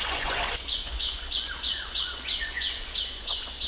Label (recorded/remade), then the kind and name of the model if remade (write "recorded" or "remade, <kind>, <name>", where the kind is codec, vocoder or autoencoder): remade, vocoder, Vocos